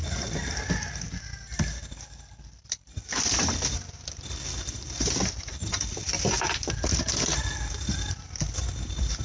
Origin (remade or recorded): remade